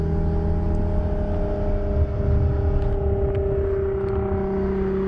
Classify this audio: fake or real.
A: real